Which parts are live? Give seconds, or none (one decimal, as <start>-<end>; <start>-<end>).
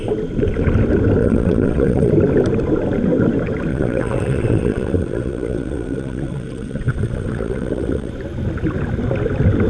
0.0-1.2; 2.1-3.7; 8.1-9.7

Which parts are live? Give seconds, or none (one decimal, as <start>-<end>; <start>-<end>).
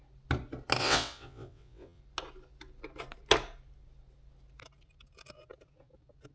0.0-0.8; 2.0-6.3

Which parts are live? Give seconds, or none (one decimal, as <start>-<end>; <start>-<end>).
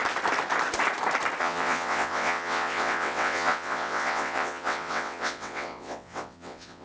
0.0-1.4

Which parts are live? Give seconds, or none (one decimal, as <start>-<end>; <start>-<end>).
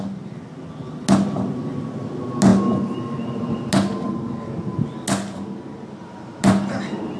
0.0-7.2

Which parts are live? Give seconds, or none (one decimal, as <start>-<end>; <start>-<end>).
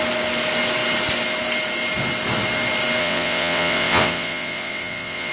0.0-3.0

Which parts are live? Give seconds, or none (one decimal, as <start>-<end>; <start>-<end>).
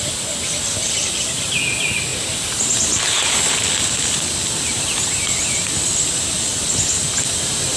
0.0-7.8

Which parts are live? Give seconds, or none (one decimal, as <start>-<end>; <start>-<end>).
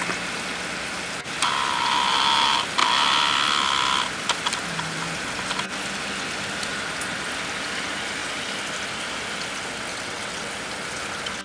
0.0-9.9; 10.5-11.4